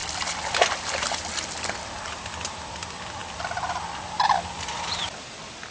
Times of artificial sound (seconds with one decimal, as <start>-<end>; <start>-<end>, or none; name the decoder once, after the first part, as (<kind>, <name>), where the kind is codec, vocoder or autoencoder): none